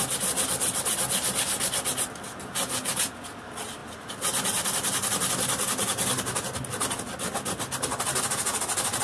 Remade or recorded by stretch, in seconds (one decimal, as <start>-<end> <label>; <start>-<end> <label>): 0.0-9.0 recorded